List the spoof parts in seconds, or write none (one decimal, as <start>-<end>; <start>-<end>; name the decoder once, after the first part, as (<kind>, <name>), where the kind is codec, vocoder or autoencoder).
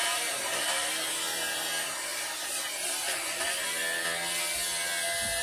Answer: 0.0-0.9 (vocoder, BigVGAN v2)